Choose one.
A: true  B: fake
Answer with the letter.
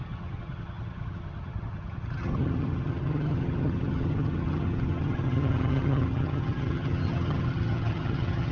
B